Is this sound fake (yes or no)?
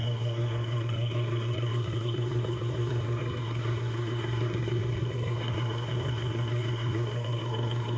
yes